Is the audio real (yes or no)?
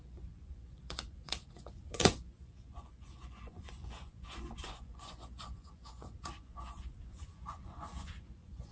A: no